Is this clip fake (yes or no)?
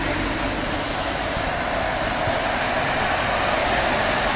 no